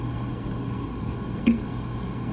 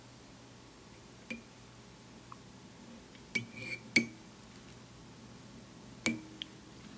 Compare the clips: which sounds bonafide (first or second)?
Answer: second